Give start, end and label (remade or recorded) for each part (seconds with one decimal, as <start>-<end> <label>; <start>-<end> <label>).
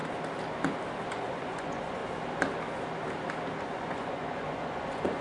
0.0-1.1 recorded; 1.1-2.0 remade; 2.0-3.6 recorded; 3.6-5.2 remade